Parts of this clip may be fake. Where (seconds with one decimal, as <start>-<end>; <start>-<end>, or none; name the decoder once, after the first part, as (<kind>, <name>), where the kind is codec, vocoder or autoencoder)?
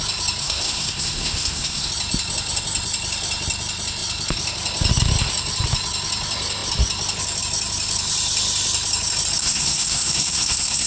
0.4-1.9 (codec, SNAC); 9.4-10.9